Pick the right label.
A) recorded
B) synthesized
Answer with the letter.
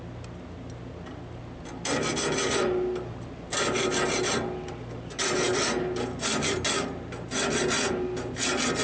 A